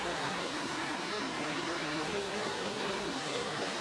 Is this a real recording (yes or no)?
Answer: no